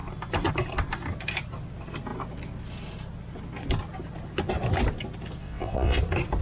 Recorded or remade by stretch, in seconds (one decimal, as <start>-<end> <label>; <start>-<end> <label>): 0.0-5.4 recorded; 5.4-6.0 remade; 6.0-6.4 recorded